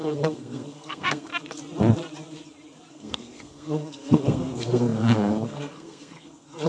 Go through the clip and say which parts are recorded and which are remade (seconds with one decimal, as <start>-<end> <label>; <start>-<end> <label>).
0.0-1.3 remade; 1.3-2.9 recorded; 2.9-6.7 remade